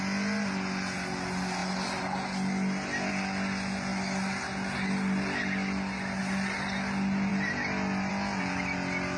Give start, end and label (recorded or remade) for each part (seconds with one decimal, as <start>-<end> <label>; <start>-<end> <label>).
0.0-9.2 recorded